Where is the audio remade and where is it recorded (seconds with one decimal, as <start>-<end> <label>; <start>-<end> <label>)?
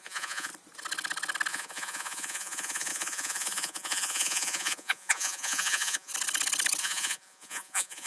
0.0-0.5 remade; 0.5-1.5 recorded; 1.5-6.1 remade; 6.1-6.8 recorded; 6.8-8.1 remade